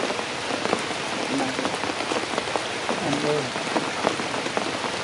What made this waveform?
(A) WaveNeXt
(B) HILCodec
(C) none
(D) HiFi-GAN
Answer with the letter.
C